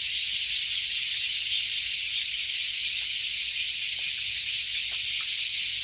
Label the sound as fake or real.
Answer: real